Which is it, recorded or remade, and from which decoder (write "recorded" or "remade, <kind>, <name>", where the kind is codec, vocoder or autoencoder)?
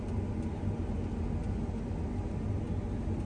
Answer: recorded